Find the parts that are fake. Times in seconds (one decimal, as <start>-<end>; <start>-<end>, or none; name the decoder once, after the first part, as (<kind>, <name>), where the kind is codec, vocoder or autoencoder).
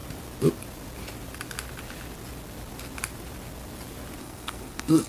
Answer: 4.2-5.1 (codec, SNAC)